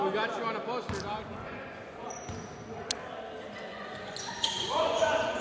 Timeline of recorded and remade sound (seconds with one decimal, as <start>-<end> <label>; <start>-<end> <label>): 0.0-1.3 recorded; 1.3-2.2 remade; 2.2-3.7 recorded; 3.7-5.4 remade